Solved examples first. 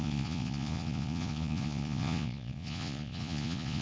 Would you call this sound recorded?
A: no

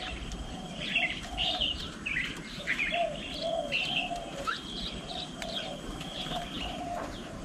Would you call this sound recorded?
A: no